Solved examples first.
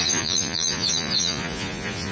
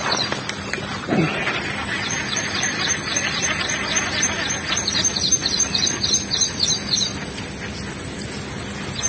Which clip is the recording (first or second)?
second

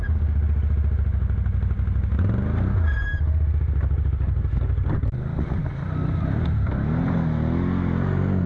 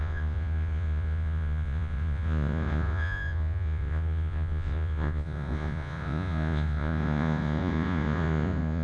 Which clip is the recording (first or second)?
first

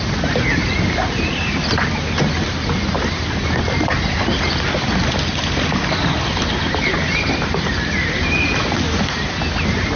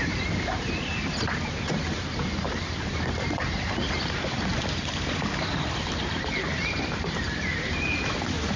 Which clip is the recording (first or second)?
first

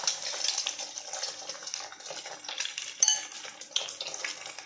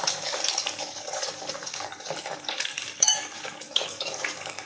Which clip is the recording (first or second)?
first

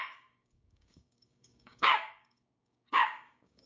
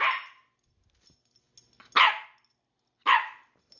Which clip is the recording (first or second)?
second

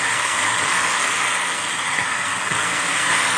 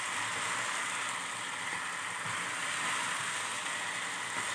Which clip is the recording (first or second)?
second